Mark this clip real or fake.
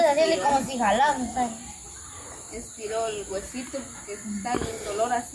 real